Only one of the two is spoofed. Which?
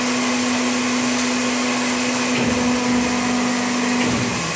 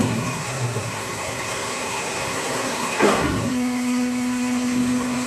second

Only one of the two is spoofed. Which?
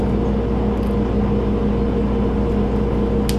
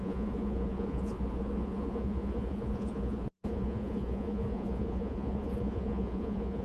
second